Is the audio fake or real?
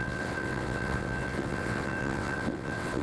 fake